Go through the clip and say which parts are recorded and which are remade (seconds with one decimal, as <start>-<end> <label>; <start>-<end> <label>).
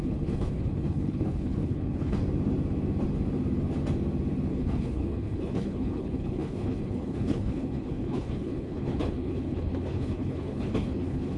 0.0-2.2 remade; 2.2-4.5 recorded; 4.5-11.4 remade